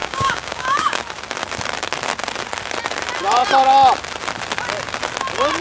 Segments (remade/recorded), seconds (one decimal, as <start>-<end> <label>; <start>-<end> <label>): 0.0-1.0 remade; 1.0-5.6 recorded